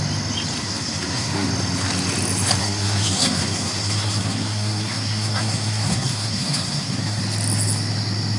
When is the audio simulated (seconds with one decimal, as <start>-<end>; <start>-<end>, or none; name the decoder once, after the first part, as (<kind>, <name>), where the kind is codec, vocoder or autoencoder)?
0.6-1.5 (codec, SNAC); 2.6-7.2